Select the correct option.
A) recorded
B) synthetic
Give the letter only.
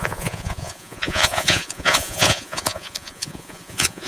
B